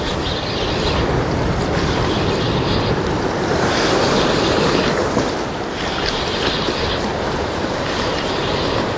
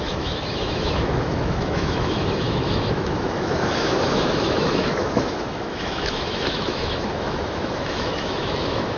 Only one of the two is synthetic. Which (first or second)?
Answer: second